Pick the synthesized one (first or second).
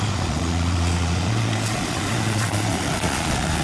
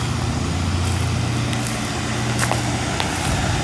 first